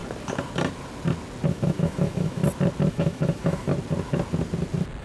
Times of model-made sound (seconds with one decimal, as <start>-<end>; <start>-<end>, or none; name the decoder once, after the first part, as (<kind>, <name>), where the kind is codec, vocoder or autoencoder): 1.5-2.4 (autoencoder, DAC-VAE); 2.9-3.7